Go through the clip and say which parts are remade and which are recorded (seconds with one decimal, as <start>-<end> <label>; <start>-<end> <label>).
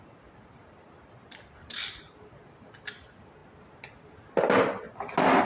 0.0-5.4 recorded